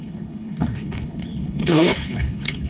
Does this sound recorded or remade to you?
remade